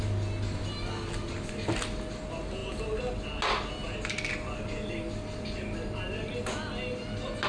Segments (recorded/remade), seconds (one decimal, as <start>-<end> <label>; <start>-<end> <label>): 0.0-7.5 recorded